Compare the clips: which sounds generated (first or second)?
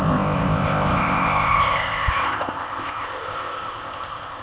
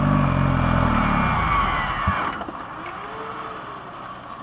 first